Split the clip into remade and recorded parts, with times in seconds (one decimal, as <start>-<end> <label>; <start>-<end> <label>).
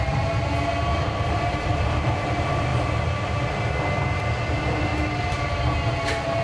0.0-6.4 recorded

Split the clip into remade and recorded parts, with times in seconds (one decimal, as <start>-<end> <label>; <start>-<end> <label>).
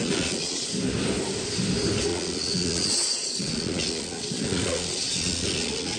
0.0-0.7 remade; 0.7-2.1 recorded; 2.1-6.0 remade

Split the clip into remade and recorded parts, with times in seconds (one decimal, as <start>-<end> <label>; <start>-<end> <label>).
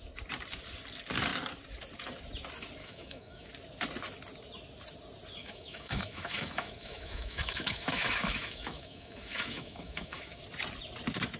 0.0-2.8 recorded; 2.8-3.5 remade; 3.5-5.4 recorded; 5.4-10.4 remade; 10.4-11.4 recorded